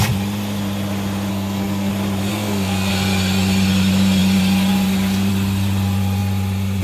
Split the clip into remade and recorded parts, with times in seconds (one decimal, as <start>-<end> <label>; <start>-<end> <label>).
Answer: 0.0-1.3 recorded; 1.3-1.9 remade; 1.9-2.3 recorded; 2.3-2.9 remade; 2.9-6.8 recorded